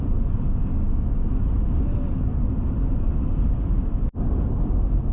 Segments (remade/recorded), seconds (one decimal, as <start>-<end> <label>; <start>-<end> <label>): 0.0-2.3 recorded; 2.3-3.2 remade; 3.2-5.1 recorded